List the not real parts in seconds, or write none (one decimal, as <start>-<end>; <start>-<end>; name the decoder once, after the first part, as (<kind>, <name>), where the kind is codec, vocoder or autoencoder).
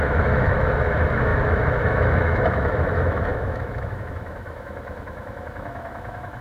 0.0-6.4 (autoencoder, DAC-VAE)